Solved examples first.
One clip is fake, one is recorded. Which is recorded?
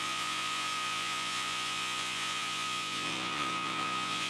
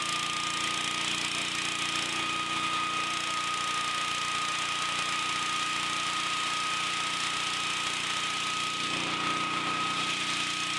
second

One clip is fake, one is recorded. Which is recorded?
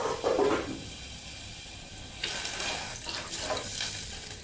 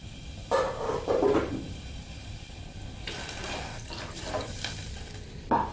first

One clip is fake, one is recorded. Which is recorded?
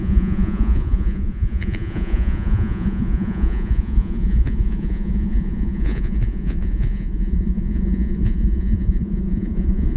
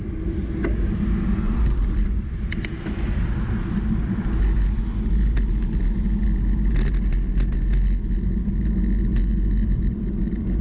second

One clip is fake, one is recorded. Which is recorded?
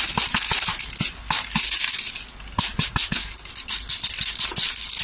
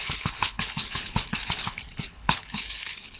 first